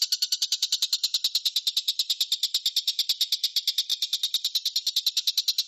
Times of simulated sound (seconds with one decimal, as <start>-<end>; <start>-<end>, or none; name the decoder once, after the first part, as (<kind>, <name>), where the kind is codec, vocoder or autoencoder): 3.9-4.9 (vocoder, BigVGAN v2)